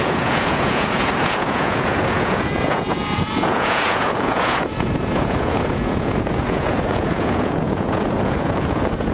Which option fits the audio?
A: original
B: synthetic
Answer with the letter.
B